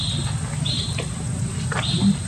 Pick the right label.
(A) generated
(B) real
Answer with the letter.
B